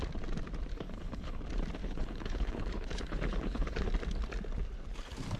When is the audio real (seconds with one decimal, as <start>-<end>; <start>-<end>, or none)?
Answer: 0.0-0.7; 1.4-1.8; 3.9-5.4